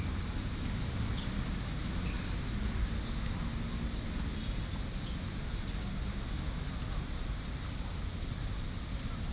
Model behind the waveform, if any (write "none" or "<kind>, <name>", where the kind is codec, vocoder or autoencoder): none